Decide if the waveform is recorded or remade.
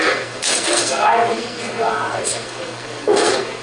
remade